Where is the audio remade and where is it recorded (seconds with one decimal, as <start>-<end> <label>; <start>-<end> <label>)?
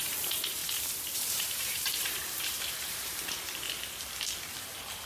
0.0-0.6 recorded; 0.6-3.6 remade; 3.6-5.0 recorded